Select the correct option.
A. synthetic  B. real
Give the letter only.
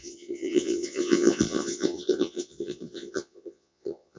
A